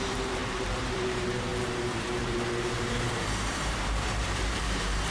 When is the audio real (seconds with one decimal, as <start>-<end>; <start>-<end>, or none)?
none